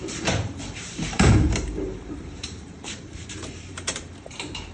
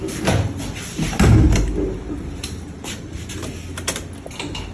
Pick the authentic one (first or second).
second